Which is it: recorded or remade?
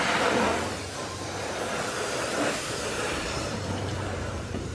remade